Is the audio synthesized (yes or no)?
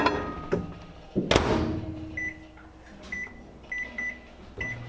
no